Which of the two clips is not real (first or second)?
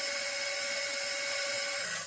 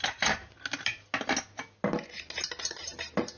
first